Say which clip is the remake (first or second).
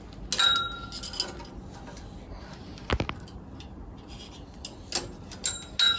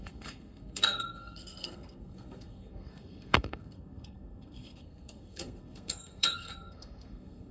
second